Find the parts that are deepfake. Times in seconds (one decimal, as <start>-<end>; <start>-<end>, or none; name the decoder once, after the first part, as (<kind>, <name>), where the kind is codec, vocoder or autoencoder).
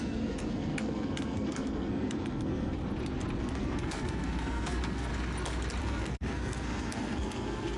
0.0-2.8 (codec, SNAC); 3.4-5.1; 5.8-7.8